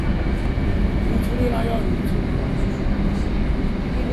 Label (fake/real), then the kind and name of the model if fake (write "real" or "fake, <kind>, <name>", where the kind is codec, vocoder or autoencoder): real